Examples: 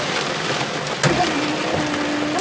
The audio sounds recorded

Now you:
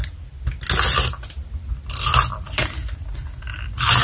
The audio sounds recorded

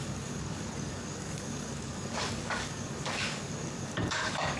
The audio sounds remade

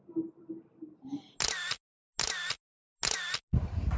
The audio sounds recorded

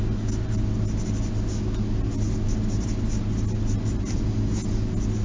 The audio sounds recorded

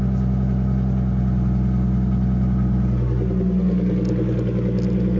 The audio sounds recorded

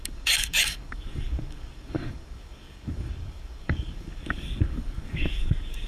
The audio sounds remade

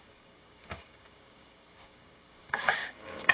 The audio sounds remade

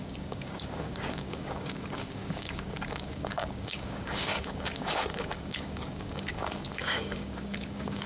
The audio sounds remade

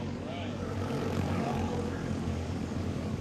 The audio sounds remade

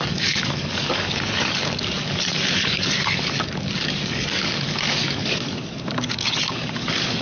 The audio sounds remade